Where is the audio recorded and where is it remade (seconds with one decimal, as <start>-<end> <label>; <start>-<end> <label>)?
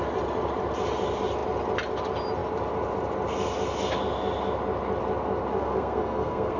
0.0-5.5 recorded; 5.5-6.6 remade